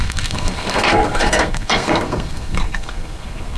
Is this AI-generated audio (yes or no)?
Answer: yes